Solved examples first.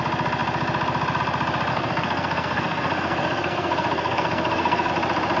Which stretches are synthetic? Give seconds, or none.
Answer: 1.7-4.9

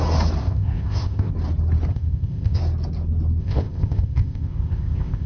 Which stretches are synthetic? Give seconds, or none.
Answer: 0.4-1.3; 1.9-2.6; 3.4-5.3

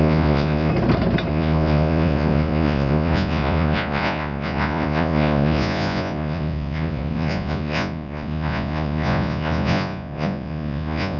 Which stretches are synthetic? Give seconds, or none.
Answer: 0.0-0.7; 1.3-11.2

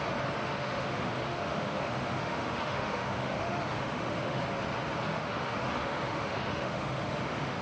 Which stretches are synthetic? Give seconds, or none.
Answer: 0.4-4.4; 5.1-7.6

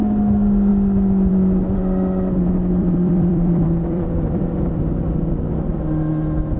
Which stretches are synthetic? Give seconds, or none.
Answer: 2.8-4.8

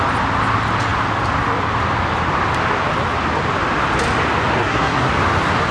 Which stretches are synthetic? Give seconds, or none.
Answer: 4.6-5.1